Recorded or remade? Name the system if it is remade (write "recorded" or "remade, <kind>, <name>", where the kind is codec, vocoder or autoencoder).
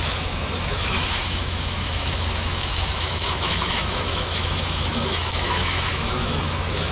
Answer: remade, autoencoder, DAC-VAE